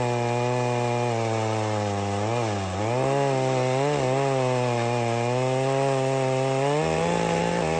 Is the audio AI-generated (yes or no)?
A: no